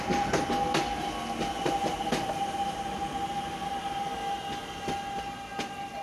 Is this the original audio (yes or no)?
yes